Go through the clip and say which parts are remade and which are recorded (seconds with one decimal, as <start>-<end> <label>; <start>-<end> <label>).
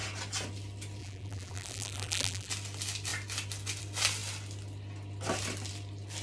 0.0-1.0 recorded; 1.0-2.5 remade; 2.5-6.2 recorded